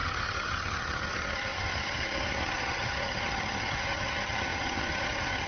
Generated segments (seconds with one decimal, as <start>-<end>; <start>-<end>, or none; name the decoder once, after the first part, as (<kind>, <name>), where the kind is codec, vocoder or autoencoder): 0.0-5.5 (vocoder, HiFi-GAN)